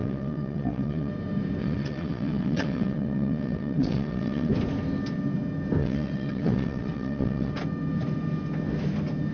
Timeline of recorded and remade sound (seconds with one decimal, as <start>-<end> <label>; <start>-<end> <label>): 0.0-1.1 remade; 1.1-1.6 recorded; 1.6-4.5 remade; 4.5-5.8 recorded; 5.8-7.5 remade; 7.5-9.3 recorded